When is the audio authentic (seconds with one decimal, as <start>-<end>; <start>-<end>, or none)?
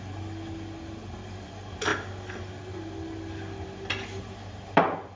0.0-5.2